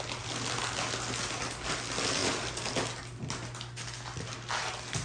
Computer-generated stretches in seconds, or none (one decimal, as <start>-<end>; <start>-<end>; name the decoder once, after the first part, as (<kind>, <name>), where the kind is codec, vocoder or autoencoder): none